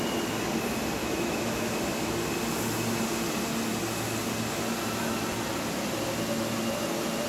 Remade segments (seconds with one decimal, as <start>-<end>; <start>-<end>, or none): 1.0-1.7